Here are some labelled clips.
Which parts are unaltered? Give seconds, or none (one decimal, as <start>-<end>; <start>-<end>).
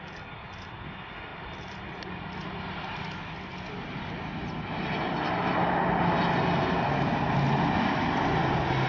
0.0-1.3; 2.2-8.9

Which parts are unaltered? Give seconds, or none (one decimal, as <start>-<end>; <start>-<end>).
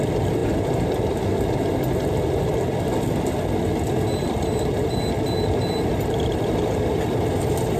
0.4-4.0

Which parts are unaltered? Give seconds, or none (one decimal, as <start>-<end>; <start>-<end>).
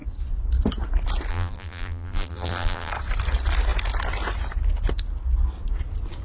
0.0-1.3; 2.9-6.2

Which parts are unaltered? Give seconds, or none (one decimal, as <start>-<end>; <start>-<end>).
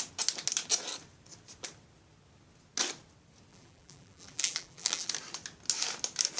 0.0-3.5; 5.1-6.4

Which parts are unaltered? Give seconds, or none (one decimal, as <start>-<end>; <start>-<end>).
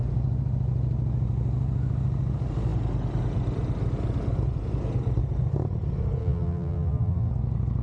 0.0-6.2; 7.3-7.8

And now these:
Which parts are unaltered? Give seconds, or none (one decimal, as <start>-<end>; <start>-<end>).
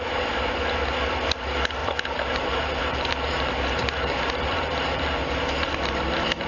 0.0-1.8; 5.7-6.5